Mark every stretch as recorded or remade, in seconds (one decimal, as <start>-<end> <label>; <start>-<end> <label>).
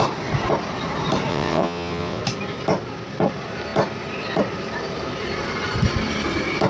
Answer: 0.0-1.3 recorded; 1.3-2.2 remade; 2.2-6.7 recorded